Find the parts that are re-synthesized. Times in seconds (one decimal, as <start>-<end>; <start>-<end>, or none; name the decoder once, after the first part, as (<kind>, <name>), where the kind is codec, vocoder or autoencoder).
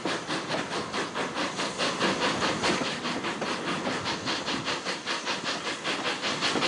1.4-3.0 (vocoder, BigVGAN v2)